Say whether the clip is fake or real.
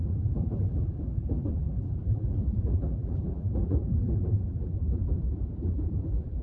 fake